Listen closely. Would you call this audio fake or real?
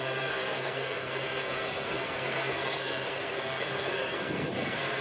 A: fake